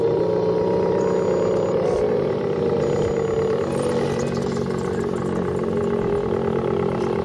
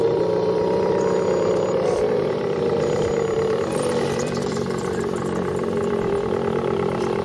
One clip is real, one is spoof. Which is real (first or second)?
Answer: first